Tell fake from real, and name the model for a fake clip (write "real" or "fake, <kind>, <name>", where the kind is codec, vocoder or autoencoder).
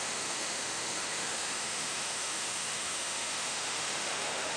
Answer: fake, autoencoder, DAC-VAE